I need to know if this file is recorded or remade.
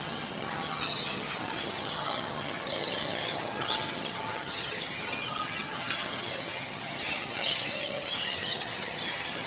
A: remade